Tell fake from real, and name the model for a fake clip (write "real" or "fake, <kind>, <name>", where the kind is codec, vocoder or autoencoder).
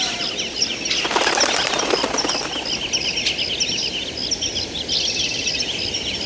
real